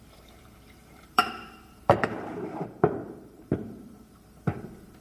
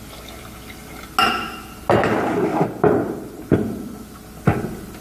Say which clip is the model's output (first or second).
first